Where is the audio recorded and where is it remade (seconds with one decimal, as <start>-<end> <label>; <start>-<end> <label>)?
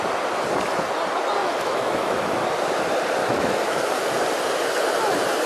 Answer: 0.0-1.4 recorded; 1.4-2.4 remade; 2.4-3.2 recorded; 3.2-3.9 remade; 3.9-5.5 recorded